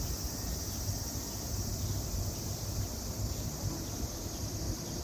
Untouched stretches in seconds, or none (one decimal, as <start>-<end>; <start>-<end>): 0.0-5.0